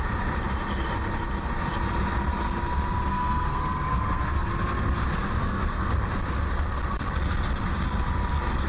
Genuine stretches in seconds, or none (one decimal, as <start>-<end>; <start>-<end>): 0.0-3.1; 4.5-5.4; 5.9-8.7